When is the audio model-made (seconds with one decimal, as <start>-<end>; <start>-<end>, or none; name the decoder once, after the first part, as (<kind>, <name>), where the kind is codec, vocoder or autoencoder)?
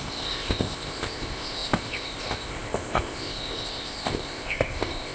0.0-5.1 (codec, ZipCodec)